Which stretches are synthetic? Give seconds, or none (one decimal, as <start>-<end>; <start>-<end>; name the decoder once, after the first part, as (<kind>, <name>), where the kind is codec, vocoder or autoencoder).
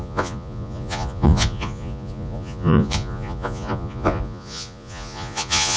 0.0-5.8 (vocoder, Vocos)